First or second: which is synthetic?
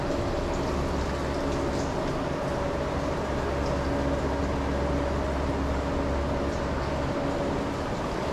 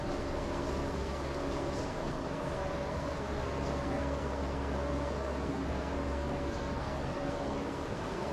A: second